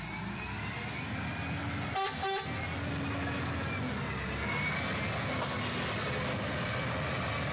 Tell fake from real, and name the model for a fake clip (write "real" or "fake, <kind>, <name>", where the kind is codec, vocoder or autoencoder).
real